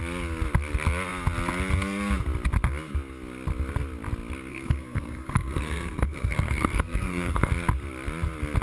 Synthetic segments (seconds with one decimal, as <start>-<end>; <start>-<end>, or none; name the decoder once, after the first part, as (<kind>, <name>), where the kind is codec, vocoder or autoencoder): 4.5-7.5 (codec, SNAC)